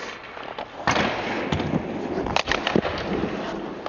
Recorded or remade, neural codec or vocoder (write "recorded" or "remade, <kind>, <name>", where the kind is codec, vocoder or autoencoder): recorded